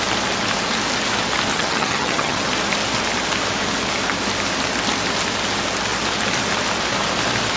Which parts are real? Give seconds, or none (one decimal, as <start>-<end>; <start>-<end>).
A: 0.0-1.5; 2.4-7.6